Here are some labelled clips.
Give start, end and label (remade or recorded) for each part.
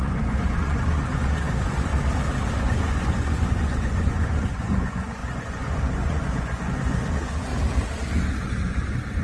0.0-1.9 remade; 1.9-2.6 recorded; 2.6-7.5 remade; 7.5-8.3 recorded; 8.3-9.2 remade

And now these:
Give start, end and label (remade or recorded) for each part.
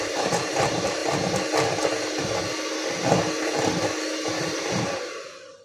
0.0-1.0 remade; 1.0-4.4 recorded; 4.4-5.6 remade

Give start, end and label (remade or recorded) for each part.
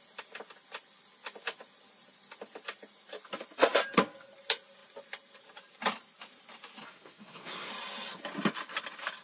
0.0-6.8 recorded; 6.8-7.7 remade; 7.7-9.2 recorded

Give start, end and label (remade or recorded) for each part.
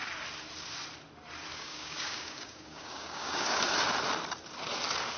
0.0-1.5 recorded; 1.5-3.6 remade; 3.6-5.2 recorded